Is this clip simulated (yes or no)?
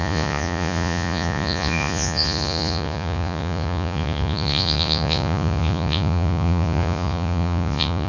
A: yes